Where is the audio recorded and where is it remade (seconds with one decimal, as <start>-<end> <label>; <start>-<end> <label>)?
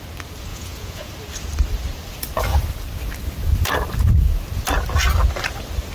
0.0-0.5 recorded; 0.5-1.1 remade; 1.1-5.9 recorded